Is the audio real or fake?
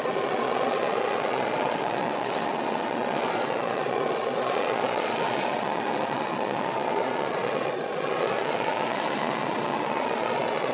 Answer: fake